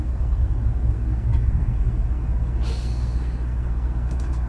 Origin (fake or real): fake